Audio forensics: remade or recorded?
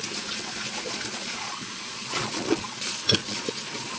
remade